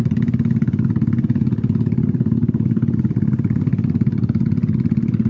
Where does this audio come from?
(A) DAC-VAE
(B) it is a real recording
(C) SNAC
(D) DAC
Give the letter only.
B